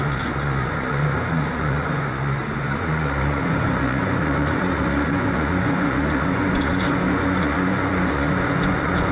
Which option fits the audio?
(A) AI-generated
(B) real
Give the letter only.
A